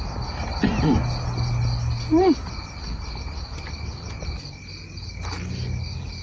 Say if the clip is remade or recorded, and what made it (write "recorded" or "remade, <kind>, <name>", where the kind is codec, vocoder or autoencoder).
recorded